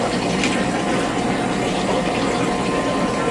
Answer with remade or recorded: recorded